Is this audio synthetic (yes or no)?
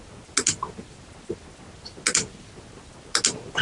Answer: no